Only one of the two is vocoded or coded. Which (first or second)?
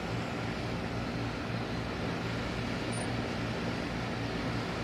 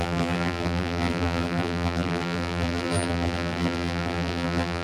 second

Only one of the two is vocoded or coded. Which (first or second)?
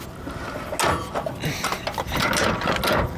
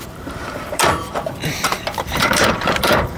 second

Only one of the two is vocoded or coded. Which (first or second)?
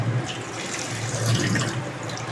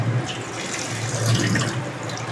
first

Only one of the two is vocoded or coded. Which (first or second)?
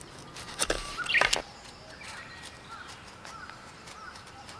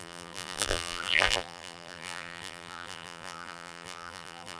second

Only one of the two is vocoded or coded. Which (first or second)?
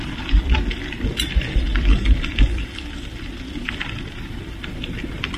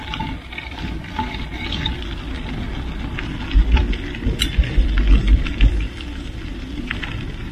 first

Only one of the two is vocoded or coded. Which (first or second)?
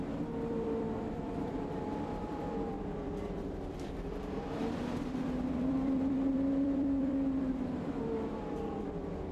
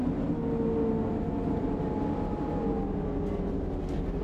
first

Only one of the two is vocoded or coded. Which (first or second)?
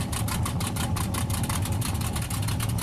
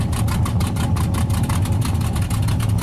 first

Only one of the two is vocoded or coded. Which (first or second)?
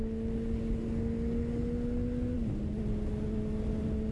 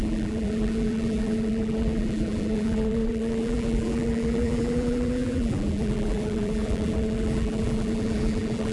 second